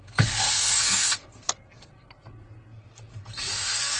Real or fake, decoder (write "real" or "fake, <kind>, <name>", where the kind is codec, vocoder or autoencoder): fake, codec, SNAC